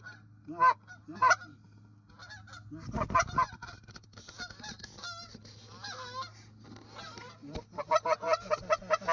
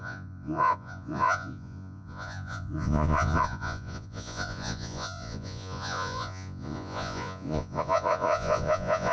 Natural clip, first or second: first